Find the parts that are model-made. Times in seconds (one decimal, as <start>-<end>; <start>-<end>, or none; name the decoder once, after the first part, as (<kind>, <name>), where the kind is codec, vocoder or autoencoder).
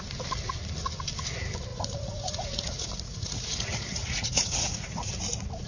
1.7-5.1 (vocoder, Vocos)